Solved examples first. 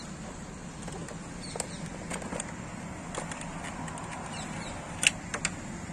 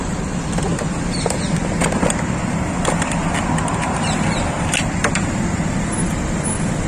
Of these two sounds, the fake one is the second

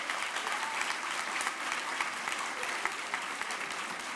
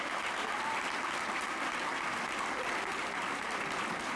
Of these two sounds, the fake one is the first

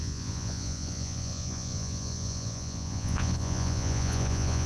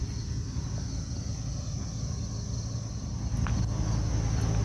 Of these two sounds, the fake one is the first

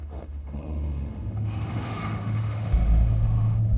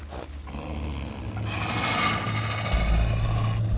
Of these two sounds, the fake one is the first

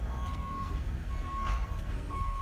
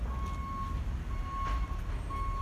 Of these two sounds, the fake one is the first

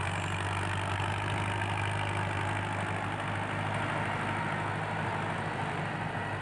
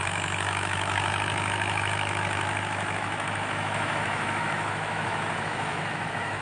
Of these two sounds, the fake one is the second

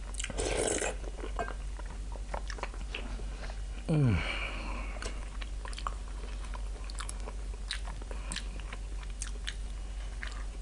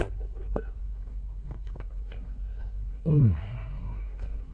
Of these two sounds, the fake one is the second